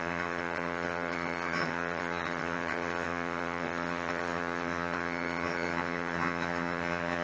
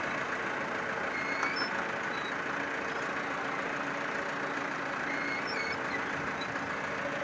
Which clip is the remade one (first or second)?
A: first